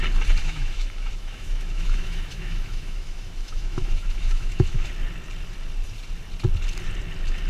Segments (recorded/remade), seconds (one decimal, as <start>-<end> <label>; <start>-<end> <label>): 0.0-0.4 recorded; 0.4-4.9 remade; 4.9-7.5 recorded